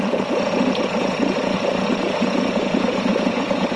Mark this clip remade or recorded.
remade